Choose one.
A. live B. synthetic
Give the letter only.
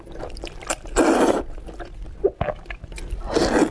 A